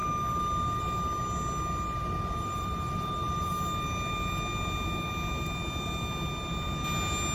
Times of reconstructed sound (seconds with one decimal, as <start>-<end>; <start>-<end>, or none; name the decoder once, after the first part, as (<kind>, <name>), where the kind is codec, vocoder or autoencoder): 2.0-3.5 (vocoder, BigVGAN v2)